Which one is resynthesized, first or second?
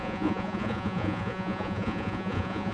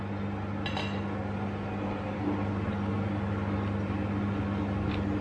first